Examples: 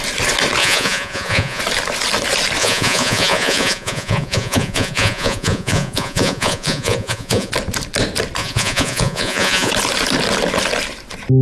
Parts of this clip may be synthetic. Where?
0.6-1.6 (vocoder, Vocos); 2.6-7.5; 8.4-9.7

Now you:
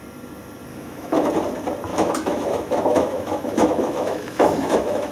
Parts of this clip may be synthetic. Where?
0.7-1.3 (autoencoder, DAC-VAE); 1.9-5.1

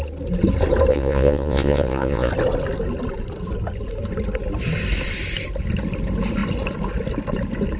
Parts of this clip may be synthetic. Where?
0.9-2.3 (vocoder, Vocos)

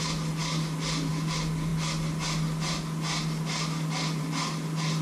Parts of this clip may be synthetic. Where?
none

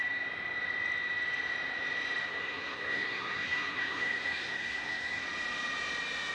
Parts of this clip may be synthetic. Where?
2.2-5.2 (codec, SNAC)

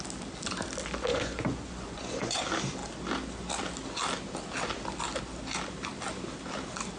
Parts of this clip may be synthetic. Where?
1.1-2.4 (vocoder, Vocos)

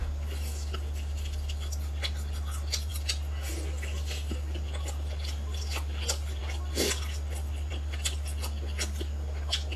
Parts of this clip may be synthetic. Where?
none

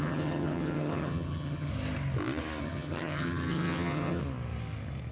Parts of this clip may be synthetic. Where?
0.0-1.7 (vocoder, HiFi-GAN); 2.6-4.2